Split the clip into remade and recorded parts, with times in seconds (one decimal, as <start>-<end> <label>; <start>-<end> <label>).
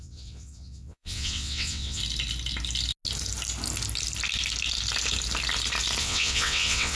0.0-2.0 remade; 2.0-6.0 recorded; 6.0-6.9 remade